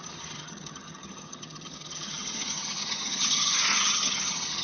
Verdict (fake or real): fake